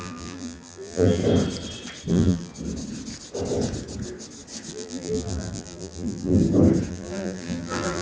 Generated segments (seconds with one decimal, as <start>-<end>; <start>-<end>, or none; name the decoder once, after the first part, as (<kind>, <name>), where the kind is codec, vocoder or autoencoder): 0.0-1.2 (vocoder, BigVGAN v2); 2.1-2.5; 4.7-6.4; 6.9-8.0